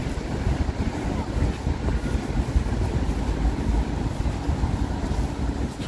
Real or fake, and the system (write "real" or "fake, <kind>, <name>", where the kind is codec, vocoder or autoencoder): real